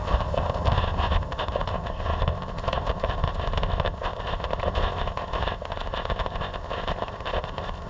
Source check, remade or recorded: remade